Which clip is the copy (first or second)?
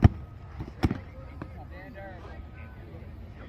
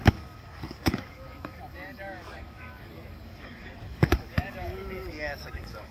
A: second